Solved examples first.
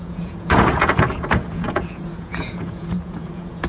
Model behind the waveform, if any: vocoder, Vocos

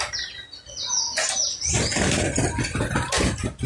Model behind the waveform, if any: none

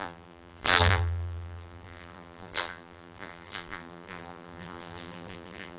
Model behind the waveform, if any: vocoder, BigVGAN v2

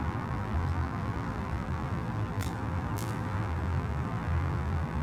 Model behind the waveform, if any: vocoder, BigVGAN v2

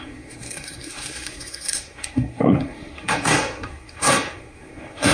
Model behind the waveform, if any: codec, SNAC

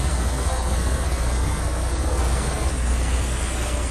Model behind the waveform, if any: codec, SNAC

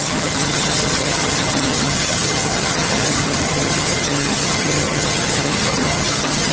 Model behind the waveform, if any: vocoder, HiFi-GAN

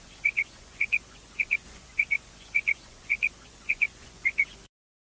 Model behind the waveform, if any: vocoder, Vocos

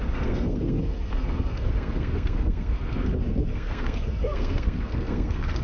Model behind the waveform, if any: codec, SNAC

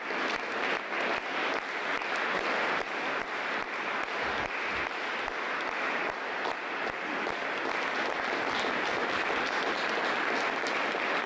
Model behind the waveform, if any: none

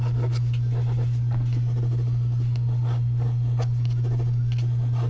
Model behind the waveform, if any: none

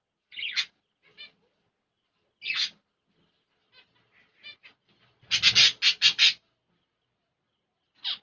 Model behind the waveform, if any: none